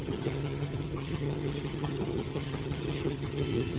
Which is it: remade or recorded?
remade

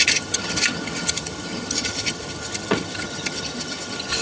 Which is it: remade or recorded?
remade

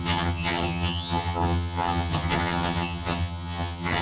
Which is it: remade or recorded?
remade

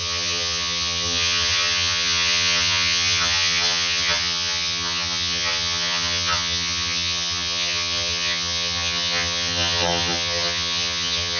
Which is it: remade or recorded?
remade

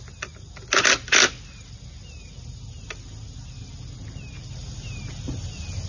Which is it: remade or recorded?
recorded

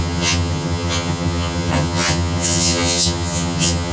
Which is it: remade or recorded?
remade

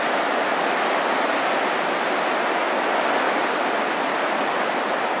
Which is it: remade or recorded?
recorded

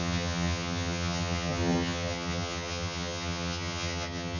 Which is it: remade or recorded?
remade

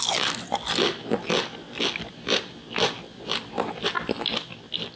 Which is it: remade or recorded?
recorded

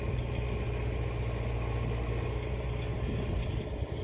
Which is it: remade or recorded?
recorded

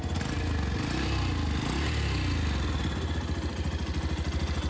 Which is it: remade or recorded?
recorded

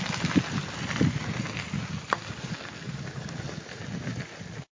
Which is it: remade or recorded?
recorded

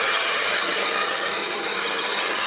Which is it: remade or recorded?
remade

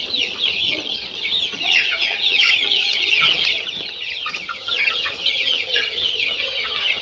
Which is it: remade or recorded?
remade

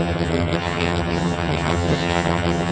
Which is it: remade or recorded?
remade